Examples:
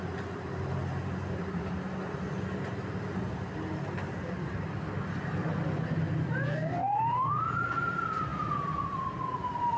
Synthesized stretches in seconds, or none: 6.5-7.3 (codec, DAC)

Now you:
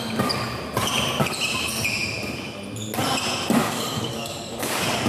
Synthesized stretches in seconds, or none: 3.6-5.1 (codec, DAC)

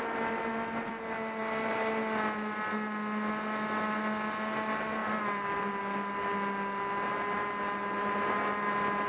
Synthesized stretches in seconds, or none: none

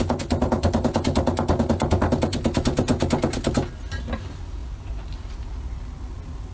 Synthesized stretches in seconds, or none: none

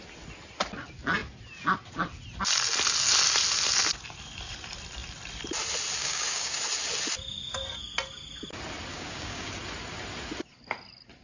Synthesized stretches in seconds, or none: 6.0-6.6 (codec, DAC); 8.9-9.5

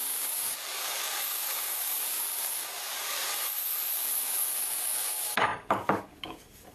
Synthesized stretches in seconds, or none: 0.0-6.7 (codec, DAC)

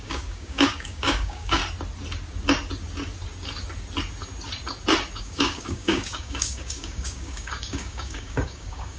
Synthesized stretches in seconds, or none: 0.0-1.6 (codec, DAC); 5.2-9.0